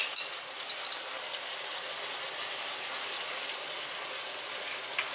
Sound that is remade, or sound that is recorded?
recorded